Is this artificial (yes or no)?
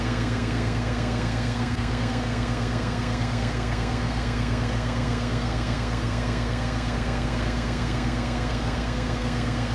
yes